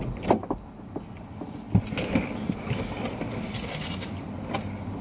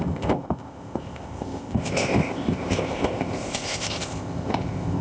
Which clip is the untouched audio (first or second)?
first